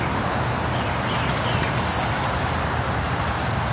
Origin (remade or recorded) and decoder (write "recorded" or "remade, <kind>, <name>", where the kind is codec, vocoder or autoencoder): recorded